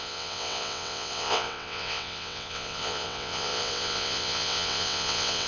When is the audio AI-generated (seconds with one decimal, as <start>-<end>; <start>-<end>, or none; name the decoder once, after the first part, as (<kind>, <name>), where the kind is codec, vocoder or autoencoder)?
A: 0.0-5.5 (vocoder, WaveNeXt)